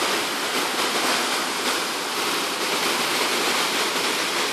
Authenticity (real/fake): real